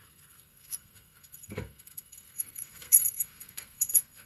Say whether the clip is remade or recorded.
remade